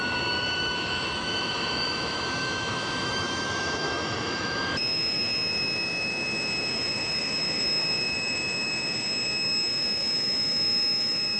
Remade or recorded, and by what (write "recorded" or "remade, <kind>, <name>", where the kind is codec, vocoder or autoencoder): remade, autoencoder, DAC-VAE